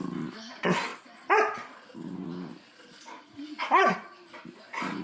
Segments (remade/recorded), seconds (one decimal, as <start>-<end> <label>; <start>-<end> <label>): 0.0-5.0 recorded